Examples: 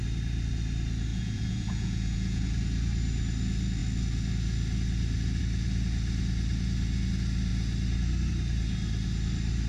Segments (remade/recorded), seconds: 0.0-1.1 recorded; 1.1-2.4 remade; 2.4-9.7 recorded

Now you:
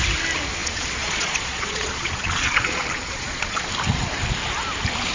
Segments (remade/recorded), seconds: 0.0-0.6 recorded; 0.6-3.7 remade; 3.7-5.1 recorded